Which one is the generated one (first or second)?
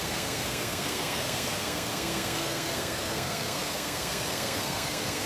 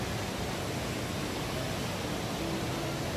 first